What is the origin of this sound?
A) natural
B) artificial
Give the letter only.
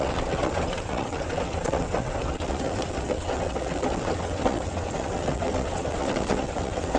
B